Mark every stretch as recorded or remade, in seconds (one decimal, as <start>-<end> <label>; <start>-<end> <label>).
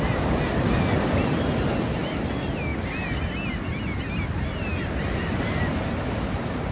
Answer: 0.0-6.7 recorded